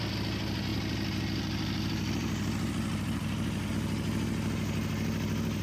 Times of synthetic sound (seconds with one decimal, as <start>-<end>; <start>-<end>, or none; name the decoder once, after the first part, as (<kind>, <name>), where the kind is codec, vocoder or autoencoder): none

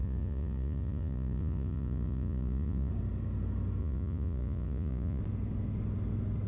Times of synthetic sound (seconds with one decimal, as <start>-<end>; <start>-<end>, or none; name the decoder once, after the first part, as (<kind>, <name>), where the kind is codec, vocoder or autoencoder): 0.0-2.9 (vocoder, Vocos); 3.8-5.2

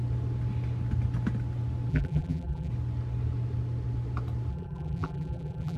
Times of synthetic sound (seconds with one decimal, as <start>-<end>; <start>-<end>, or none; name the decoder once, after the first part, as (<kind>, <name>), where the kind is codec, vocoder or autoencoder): 1.9-2.7 (vocoder, BigVGAN v2); 4.5-5.8

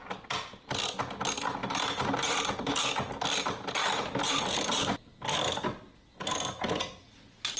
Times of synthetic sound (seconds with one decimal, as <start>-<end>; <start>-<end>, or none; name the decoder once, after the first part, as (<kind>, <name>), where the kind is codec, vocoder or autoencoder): 1.6-2.5 (vocoder, BigVGAN v2); 3.8-4.9